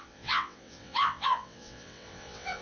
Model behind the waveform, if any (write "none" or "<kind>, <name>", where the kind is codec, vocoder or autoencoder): vocoder, WaveNeXt